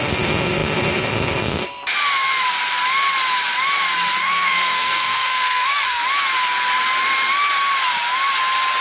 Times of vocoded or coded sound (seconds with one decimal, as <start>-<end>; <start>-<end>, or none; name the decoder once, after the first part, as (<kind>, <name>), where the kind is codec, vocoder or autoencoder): 4.2-6.0 (codec, SNAC)